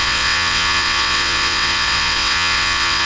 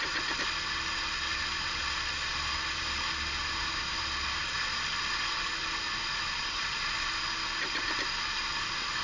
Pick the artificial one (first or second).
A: first